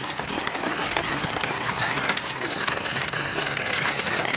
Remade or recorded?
remade